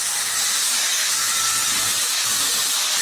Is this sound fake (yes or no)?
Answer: no